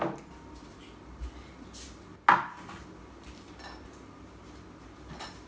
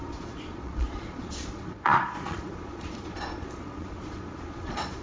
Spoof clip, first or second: second